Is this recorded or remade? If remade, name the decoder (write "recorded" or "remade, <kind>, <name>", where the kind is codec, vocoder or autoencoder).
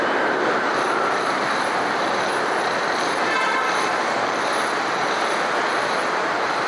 remade, vocoder, BigVGAN v2